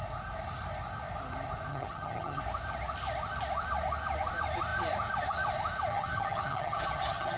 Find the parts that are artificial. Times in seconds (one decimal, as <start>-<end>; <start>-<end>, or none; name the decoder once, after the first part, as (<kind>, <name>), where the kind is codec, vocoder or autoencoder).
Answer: 1.7-2.4 (vocoder, HiFi-GAN); 5.9-7.4